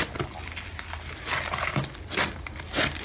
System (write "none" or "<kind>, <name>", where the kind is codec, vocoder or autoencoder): none